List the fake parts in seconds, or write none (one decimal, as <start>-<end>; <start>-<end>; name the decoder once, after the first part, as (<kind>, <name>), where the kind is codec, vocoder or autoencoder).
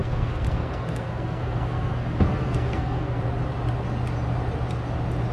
0.0-3.2 (codec, SNAC)